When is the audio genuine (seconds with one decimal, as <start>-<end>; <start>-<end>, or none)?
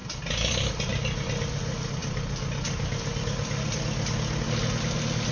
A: 0.0-5.3